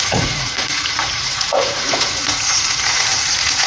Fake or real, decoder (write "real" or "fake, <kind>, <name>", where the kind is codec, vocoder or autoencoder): fake, vocoder, Vocos